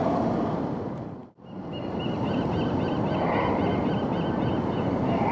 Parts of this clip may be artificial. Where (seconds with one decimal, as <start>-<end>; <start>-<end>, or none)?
0.0-1.2; 4.4-5.3